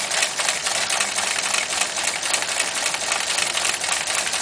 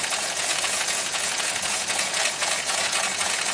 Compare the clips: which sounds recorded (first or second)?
first